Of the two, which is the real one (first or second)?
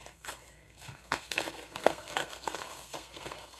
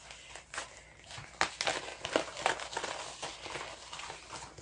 second